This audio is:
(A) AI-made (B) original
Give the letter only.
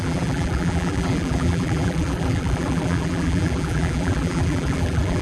A